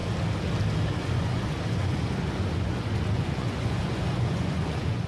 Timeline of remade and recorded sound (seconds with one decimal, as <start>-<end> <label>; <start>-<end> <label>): 0.0-0.9 recorded; 0.9-5.1 remade